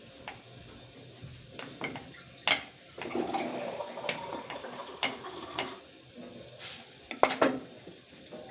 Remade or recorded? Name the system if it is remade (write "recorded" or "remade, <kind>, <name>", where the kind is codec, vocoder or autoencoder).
recorded